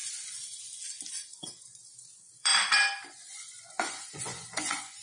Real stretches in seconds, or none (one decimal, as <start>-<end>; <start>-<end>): 0.0-1.1; 2.5-3.1